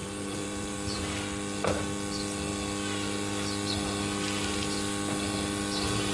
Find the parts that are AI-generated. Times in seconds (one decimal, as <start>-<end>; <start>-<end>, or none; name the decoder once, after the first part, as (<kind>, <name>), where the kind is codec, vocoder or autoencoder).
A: 0.0-1.0 (vocoder, BigVGAN v2)